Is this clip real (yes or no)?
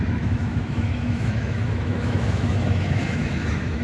no